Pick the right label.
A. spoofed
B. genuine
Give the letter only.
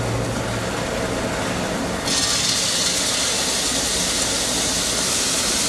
B